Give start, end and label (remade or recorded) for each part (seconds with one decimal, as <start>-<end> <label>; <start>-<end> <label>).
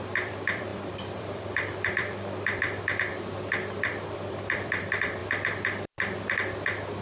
0.0-3.1 remade; 3.1-3.8 recorded; 3.8-5.2 remade; 5.2-7.0 recorded